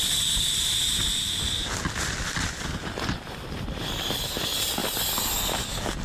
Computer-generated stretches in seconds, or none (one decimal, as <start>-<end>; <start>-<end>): none